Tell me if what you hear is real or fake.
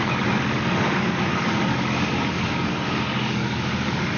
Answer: fake